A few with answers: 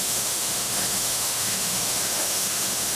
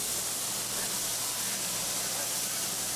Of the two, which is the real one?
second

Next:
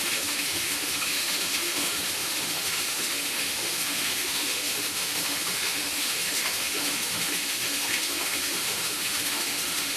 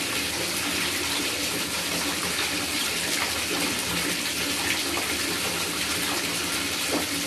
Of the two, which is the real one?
second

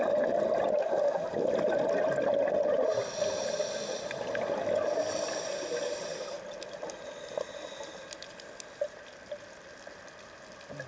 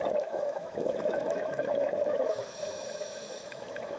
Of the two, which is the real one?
first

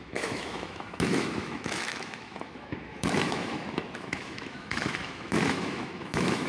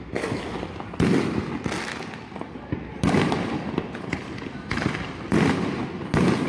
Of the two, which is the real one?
second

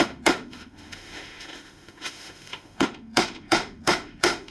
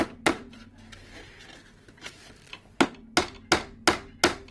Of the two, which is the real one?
second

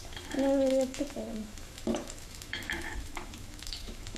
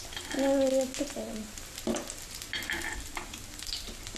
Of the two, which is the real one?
second